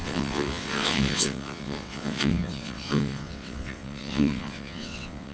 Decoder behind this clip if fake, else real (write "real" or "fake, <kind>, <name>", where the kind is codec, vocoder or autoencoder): fake, vocoder, WaveNeXt